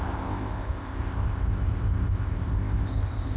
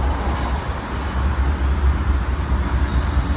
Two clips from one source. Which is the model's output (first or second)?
first